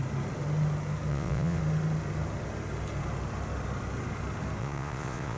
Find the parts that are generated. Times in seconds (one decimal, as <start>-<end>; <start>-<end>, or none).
1.1-1.6; 4.6-5.4

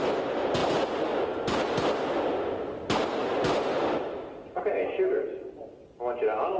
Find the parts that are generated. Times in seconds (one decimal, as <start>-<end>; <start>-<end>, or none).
none